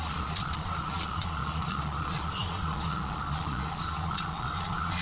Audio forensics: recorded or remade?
remade